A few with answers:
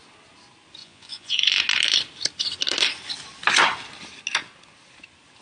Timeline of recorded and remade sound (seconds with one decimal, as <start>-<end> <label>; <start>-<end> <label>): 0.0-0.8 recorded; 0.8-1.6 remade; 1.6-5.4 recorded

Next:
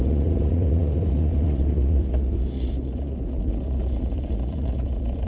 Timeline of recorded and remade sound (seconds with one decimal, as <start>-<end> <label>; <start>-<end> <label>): 0.0-5.3 remade

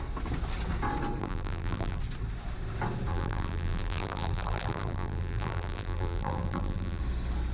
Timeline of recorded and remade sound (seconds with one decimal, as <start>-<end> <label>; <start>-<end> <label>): 0.0-1.2 recorded; 1.2-2.0 remade; 2.0-3.1 recorded; 3.1-7.0 remade; 7.0-7.5 recorded

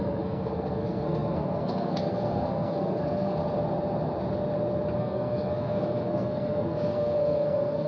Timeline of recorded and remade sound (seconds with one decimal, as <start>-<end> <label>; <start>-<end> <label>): 0.0-3.4 remade; 3.4-5.0 recorded; 5.0-7.9 remade

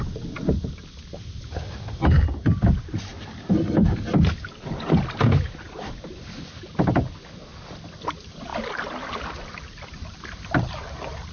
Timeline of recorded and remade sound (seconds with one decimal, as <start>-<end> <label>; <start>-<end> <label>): 0.0-11.3 recorded